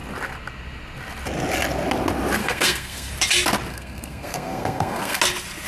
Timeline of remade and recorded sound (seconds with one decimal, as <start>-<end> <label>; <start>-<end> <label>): 0.0-2.4 recorded; 2.4-3.1 remade; 3.1-3.7 recorded; 3.7-5.2 remade; 5.2-5.7 recorded